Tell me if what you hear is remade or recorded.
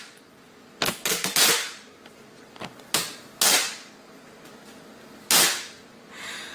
recorded